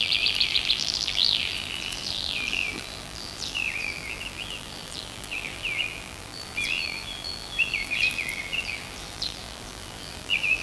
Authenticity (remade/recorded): remade